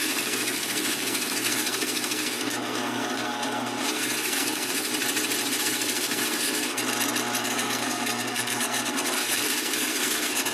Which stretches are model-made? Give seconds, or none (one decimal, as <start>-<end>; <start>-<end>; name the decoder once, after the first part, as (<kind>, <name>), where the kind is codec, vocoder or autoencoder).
0.0-4.9 (codec, SNAC); 5.6-6.8; 7.4-10.5